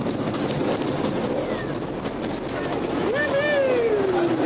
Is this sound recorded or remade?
recorded